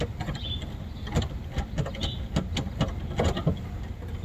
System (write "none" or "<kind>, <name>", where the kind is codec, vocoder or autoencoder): none